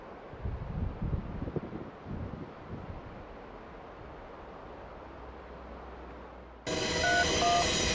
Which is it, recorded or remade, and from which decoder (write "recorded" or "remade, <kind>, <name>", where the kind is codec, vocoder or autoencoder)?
recorded